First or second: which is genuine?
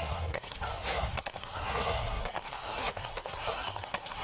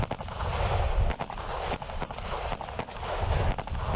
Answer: second